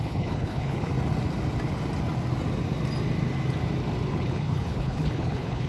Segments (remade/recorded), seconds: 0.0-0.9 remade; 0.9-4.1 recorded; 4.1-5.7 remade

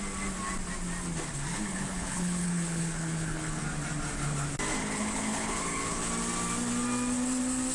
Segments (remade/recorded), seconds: 0.0-1.5 recorded; 1.5-3.6 remade; 3.6-4.8 recorded; 4.8-6.1 remade; 6.1-7.7 recorded

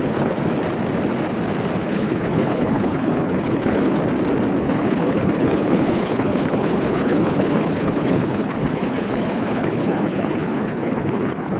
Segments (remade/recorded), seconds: 0.0-0.4 remade; 0.4-1.8 recorded; 1.8-4.0 remade; 4.0-4.6 recorded; 4.6-11.6 remade

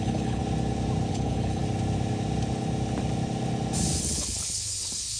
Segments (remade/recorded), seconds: 0.0-0.4 remade; 0.4-1.1 recorded; 1.1-1.6 remade; 1.6-4.0 recorded; 4.0-5.2 remade

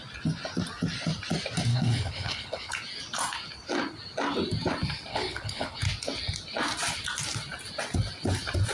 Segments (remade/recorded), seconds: 0.0-1.7 recorded; 1.7-2.7 remade; 2.7-5.1 recorded; 5.1-5.8 remade; 5.8-8.7 recorded

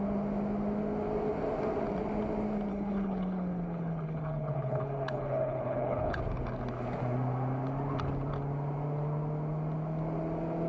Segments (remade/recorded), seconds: 0.0-2.7 recorded; 2.7-6.2 remade; 6.2-10.7 recorded

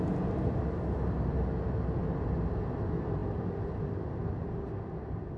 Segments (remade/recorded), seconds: 0.0-5.4 recorded